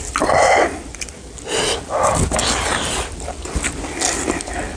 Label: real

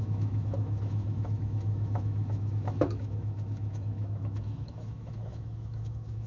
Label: fake